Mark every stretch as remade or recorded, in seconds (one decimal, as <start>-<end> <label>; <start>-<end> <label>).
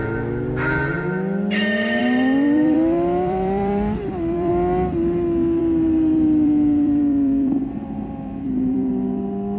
0.0-2.0 recorded; 2.0-4.5 remade; 4.5-5.6 recorded; 5.6-8.9 remade; 8.9-9.6 recorded